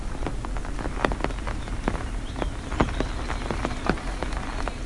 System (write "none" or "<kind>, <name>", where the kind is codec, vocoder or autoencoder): none